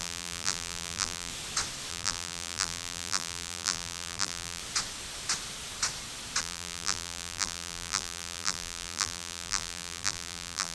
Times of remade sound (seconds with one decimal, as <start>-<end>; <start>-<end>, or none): 0.0-1.3; 1.9-4.6; 6.4-10.7